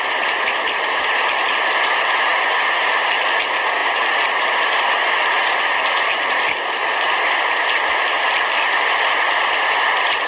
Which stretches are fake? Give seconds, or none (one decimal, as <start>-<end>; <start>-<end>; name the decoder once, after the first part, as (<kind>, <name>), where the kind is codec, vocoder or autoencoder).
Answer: none